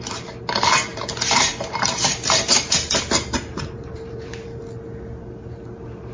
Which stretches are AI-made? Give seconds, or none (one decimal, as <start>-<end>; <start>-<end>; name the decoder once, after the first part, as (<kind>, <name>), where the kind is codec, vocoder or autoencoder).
0.9-4.6 (vocoder, BigVGAN v2)